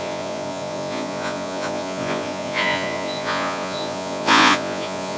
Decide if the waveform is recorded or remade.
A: remade